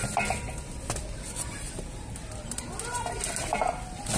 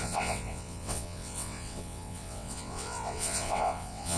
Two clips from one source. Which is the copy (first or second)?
second